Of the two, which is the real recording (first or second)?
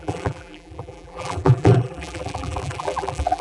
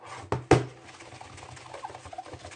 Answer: second